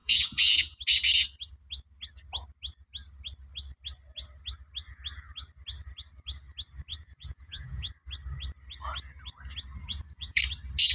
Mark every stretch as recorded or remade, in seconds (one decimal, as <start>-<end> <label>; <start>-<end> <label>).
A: 0.0-0.8 remade; 0.8-6.9 recorded; 6.9-7.9 remade; 7.9-9.8 recorded; 9.8-10.4 remade; 10.4-10.9 recorded